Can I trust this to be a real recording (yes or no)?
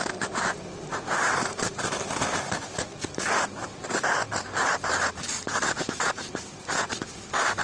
no